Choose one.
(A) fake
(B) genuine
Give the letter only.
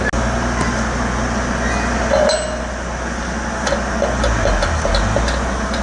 B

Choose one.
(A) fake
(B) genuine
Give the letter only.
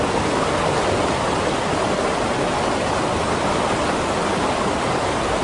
B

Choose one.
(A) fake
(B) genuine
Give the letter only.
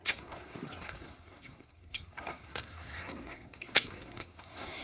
A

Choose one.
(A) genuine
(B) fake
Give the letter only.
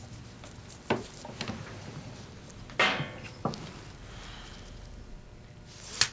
A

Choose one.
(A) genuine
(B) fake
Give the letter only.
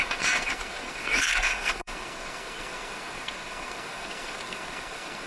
B